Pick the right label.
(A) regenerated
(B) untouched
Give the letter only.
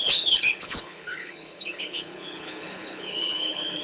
A